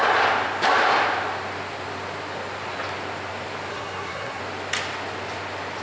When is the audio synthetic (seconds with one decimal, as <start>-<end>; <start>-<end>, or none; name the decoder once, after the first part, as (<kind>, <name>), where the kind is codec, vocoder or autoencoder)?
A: 3.7-4.4 (codec, SNAC)

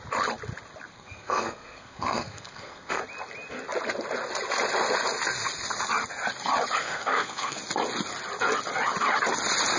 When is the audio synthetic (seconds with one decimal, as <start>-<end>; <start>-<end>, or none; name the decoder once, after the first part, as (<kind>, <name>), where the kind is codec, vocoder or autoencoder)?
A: 0.9-3.0 (codec, SNAC); 6.8-7.6

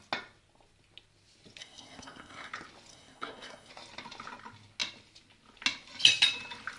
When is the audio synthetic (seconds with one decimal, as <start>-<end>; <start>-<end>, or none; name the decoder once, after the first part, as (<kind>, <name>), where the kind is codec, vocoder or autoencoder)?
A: 1.6-2.5 (codec, SNAC); 2.9-3.7

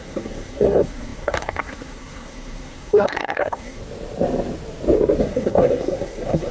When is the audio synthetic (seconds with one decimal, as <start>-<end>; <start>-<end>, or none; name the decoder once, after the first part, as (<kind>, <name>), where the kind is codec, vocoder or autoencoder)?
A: 0.0-3.8 (codec, SNAC); 5.2-6.5

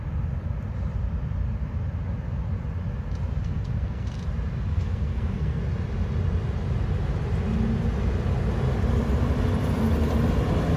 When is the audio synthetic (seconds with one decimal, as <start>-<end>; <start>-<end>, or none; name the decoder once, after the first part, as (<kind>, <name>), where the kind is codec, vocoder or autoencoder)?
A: 3.4-4.2 (codec, SNAC); 4.7-5.6

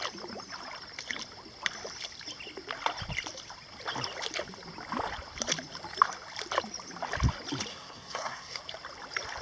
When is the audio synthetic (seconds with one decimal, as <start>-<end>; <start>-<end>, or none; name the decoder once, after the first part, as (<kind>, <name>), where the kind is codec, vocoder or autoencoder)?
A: 7.7-8.6 (codec, SNAC)

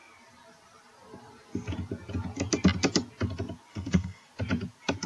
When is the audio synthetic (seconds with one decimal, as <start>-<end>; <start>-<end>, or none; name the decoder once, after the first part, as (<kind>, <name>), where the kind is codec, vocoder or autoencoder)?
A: 3.7-4.3 (codec, SNAC)